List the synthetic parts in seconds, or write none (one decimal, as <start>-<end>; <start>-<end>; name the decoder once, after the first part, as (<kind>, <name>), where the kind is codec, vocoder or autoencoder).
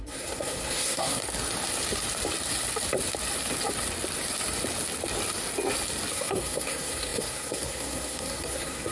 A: 0.0-1.2 (codec, SNAC); 6.1-8.9